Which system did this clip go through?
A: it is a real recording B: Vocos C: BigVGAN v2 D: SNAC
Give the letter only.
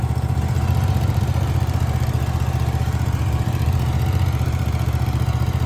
A